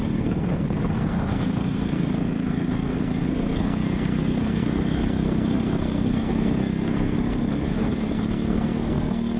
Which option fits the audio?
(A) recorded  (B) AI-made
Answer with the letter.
B